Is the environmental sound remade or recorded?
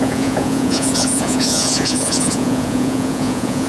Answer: remade